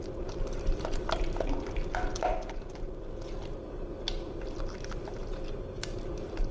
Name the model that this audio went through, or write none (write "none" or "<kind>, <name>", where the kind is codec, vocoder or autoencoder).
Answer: none